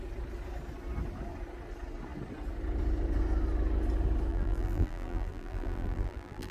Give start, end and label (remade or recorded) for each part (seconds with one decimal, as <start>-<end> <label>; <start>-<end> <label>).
0.0-4.3 recorded; 4.3-6.5 remade